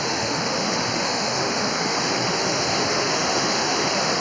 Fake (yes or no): yes